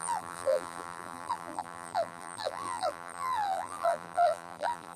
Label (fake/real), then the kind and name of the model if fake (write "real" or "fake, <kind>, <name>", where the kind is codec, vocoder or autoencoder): fake, vocoder, BigVGAN v2